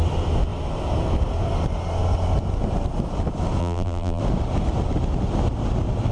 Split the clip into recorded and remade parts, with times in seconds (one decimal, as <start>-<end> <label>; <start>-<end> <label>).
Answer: 0.0-3.6 recorded; 3.6-4.2 remade; 4.2-6.1 recorded